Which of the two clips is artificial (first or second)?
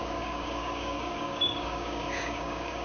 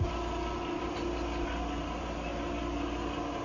first